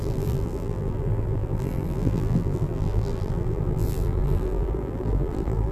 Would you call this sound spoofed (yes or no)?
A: yes